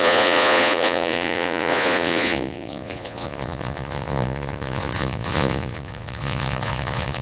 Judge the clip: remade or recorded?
remade